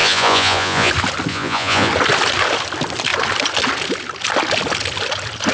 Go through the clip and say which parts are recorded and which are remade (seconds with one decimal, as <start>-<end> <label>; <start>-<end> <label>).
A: 0.0-0.9 remade; 0.9-1.3 recorded; 1.3-1.9 remade; 1.9-5.5 recorded